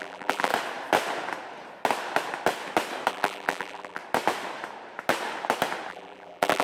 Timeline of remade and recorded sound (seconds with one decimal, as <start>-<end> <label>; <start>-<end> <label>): 0.0-0.5 remade; 0.5-3.1 recorded; 3.1-4.0 remade; 4.0-5.9 recorded; 5.9-6.6 remade